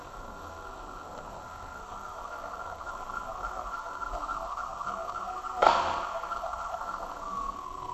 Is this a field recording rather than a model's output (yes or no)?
no